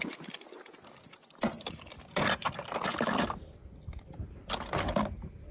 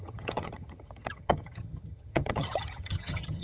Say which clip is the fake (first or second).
second